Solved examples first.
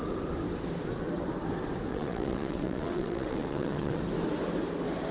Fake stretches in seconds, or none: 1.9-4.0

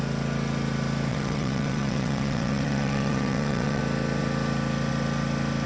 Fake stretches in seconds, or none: 1.1-3.8

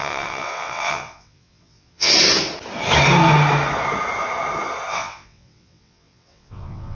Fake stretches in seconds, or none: 0.0-2.1; 4.9-6.9

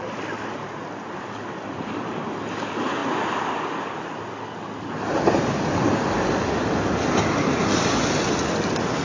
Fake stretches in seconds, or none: none

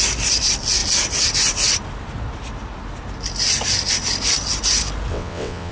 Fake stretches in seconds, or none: 5.1-5.7

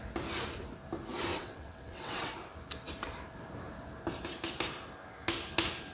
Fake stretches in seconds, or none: 1.3-2.3

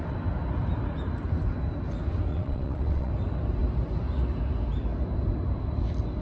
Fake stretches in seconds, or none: 2.3-3.1

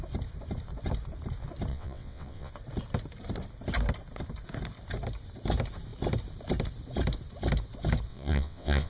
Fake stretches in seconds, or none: 1.7-2.5; 8.1-8.9